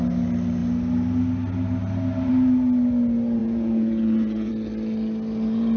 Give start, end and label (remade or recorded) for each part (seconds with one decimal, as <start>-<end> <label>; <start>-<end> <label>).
0.0-3.4 recorded; 3.4-4.5 remade; 4.5-5.8 recorded